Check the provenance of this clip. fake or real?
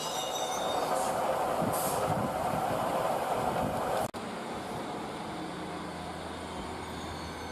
real